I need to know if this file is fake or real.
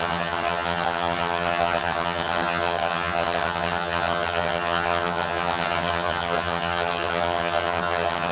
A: fake